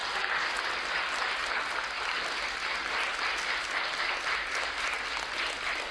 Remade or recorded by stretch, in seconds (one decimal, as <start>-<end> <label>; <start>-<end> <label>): 0.0-5.9 recorded